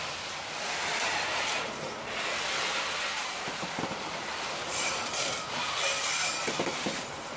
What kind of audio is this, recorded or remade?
remade